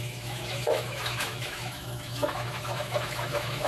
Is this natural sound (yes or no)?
no